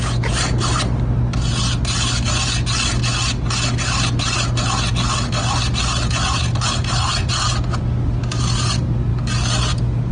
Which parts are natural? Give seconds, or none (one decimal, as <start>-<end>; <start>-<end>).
0.0-10.1